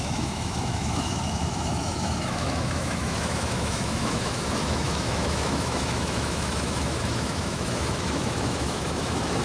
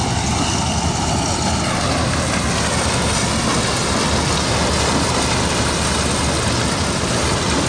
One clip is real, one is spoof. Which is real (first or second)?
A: second